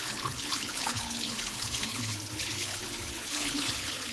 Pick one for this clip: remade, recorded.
remade